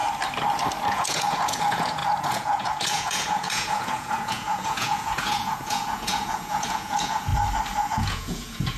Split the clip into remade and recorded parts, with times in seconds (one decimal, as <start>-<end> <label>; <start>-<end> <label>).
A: 0.0-0.9 recorded; 0.9-7.3 remade; 7.3-7.8 recorded; 7.8-8.8 remade